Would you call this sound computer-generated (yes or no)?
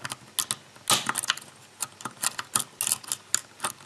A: no